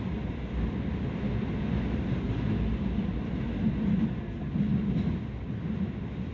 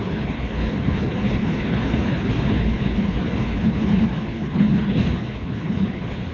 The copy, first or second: second